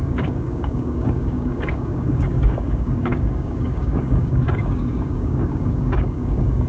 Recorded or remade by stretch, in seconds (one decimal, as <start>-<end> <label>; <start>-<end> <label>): 0.0-6.7 remade